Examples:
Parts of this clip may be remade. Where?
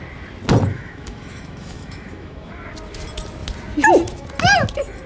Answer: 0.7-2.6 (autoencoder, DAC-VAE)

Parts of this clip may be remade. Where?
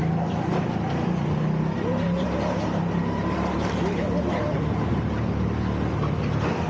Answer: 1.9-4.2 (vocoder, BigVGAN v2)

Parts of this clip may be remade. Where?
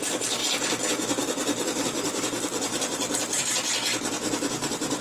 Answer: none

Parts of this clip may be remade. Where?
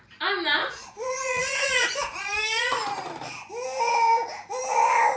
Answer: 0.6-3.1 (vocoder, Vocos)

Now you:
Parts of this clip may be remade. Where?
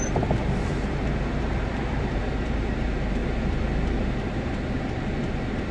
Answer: 0.0-3.2 (vocoder, BigVGAN v2); 4.0-5.7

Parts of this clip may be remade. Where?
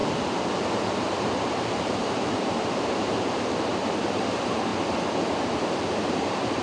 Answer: 0.0-4.7 (vocoder, BigVGAN v2); 5.4-6.6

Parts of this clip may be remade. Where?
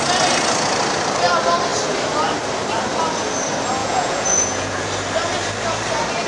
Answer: 3.8-4.9 (vocoder, Vocos)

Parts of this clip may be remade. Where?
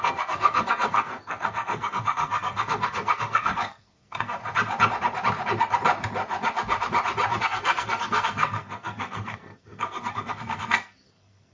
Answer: 0.0-4.4 (codec, SNAC); 7.4-11.5